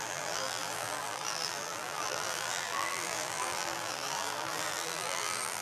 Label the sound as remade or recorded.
remade